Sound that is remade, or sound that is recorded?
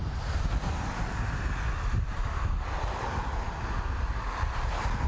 recorded